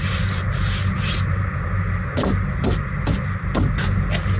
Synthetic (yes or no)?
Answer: no